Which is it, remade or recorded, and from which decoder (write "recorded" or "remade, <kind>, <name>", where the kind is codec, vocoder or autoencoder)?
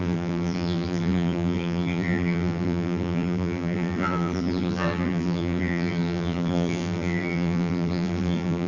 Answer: remade, vocoder, BigVGAN v2